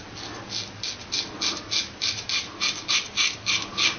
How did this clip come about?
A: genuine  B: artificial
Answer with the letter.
A